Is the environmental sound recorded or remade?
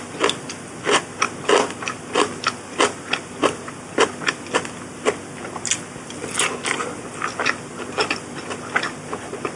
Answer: recorded